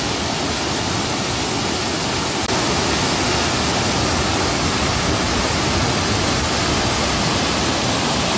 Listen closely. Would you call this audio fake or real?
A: real